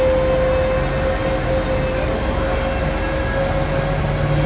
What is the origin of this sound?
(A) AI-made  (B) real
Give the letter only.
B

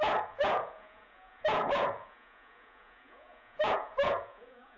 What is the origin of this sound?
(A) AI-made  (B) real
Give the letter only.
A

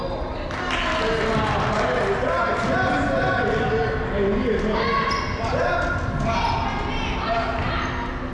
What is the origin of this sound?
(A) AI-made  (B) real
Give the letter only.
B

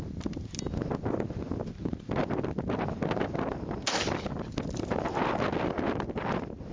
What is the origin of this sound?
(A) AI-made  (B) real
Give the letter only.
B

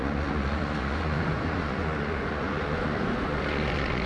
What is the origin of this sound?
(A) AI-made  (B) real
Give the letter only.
A